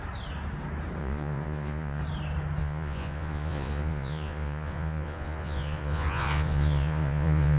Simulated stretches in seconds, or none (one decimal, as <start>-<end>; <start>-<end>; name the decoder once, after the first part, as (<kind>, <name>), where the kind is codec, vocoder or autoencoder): 1.0-2.0 (vocoder, Vocos); 2.6-7.6